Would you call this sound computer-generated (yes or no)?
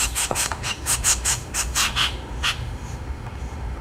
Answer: yes